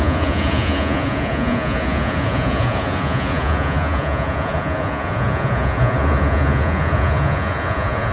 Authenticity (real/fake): fake